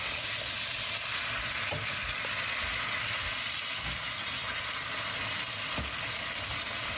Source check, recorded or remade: recorded